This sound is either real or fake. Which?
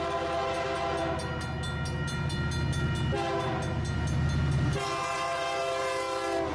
real